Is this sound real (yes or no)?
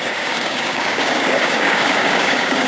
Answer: no